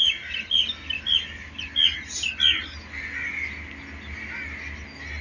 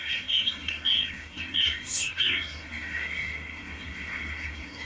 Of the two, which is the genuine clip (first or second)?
first